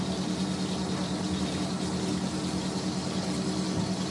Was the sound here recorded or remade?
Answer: recorded